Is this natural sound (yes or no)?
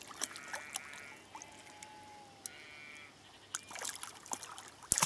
yes